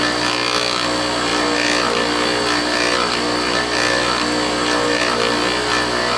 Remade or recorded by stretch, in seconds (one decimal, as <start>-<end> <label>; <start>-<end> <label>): 0.0-1.3 recorded; 1.3-5.0 remade; 5.0-6.2 recorded